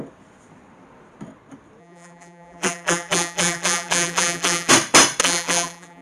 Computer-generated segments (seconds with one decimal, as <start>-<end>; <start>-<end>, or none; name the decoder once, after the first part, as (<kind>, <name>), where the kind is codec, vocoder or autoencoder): 1.8-4.7 (vocoder, BigVGAN v2); 5.2-6.0